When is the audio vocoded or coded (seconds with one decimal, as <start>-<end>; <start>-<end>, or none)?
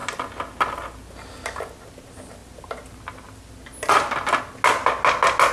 none